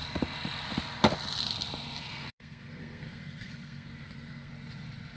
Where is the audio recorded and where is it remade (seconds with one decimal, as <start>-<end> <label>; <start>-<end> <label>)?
0.0-2.0 recorded; 2.0-4.5 remade; 4.5-5.2 recorded